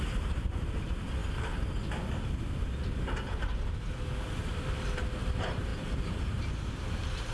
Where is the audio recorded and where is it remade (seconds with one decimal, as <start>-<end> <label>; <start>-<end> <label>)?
0.0-1.2 remade; 1.2-5.1 recorded; 5.1-7.3 remade